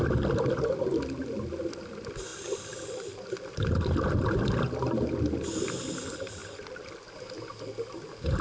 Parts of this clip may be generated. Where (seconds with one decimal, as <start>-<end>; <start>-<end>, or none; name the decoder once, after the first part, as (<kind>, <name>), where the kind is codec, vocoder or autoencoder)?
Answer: none